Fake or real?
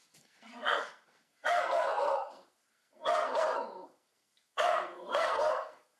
fake